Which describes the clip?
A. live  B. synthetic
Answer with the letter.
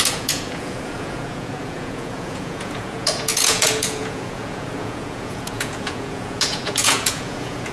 B